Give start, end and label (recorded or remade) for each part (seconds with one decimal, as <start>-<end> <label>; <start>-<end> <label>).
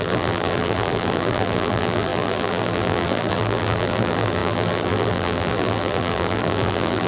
0.0-7.1 remade